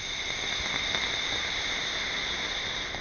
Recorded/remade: recorded